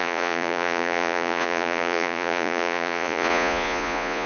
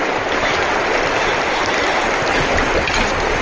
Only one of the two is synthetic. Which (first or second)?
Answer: first